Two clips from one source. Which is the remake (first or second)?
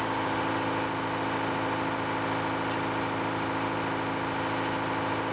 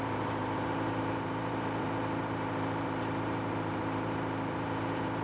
second